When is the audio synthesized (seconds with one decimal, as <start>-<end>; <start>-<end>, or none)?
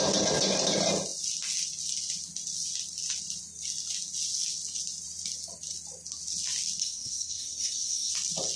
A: 6.8-8.1